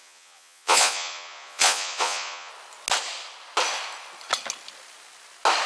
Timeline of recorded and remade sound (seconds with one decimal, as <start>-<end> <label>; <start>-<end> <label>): 0.0-2.5 remade; 2.5-5.7 recorded